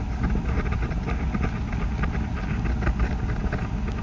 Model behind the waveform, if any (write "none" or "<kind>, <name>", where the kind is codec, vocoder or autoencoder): none